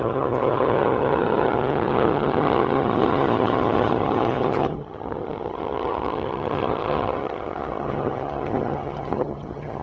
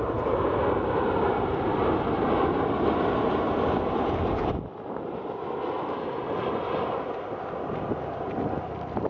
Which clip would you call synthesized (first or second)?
first